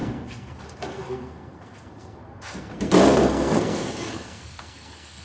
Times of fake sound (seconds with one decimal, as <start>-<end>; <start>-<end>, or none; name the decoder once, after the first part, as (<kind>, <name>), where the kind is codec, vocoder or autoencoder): 0.0-5.2 (codec, SNAC)